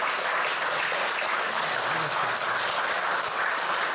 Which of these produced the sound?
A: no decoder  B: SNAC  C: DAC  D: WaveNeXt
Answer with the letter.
A